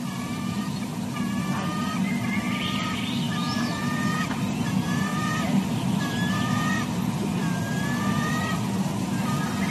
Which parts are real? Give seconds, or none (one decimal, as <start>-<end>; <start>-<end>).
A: 0.0-9.7